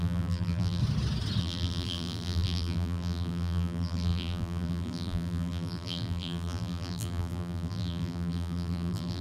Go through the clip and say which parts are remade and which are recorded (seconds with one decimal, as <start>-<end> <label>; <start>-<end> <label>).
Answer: 0.0-0.8 remade; 0.8-1.4 recorded; 1.4-9.2 remade